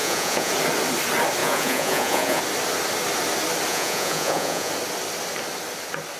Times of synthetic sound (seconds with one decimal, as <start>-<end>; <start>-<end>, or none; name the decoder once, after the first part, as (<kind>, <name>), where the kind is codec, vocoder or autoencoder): 0.0-0.5 (vocoder, Vocos); 1.4-2.4; 3.7-4.7